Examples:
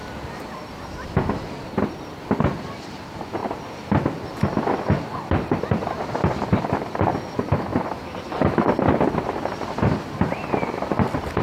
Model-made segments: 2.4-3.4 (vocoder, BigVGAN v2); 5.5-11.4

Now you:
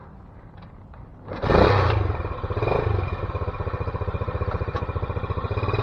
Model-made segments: 0.0-1.1 (vocoder, BigVGAN v2); 3.5-5.8

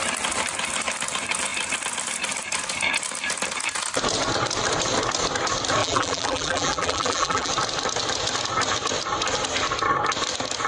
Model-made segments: 5.8-7.5 (vocoder, BigVGAN v2)

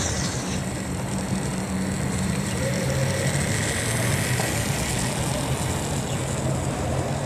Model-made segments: 0.0-1.5 (vocoder, BigVGAN v2); 2.1-3.0; 6.6-7.3